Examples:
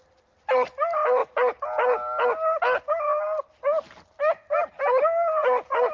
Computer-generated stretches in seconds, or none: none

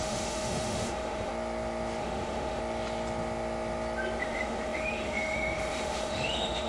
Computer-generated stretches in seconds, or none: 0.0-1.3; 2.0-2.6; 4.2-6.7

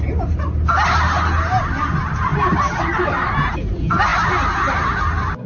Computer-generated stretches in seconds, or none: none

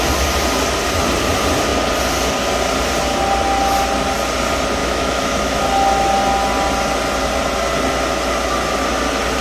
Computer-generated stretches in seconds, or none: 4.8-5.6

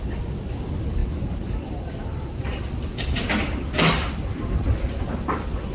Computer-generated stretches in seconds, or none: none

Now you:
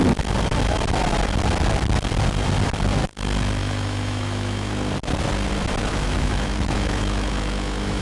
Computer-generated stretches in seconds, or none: 3.6-4.7; 5.8-8.0

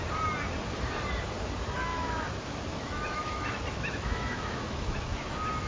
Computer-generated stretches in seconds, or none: 1.9-5.3

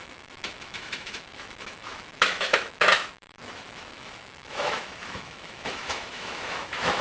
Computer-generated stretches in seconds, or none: 0.0-7.0